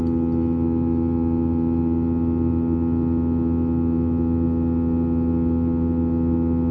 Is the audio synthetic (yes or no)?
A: no